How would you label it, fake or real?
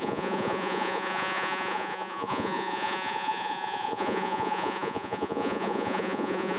fake